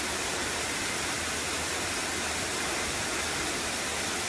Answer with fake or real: real